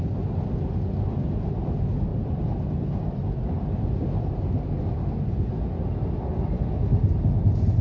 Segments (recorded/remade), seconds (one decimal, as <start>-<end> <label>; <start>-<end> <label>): 0.0-7.8 recorded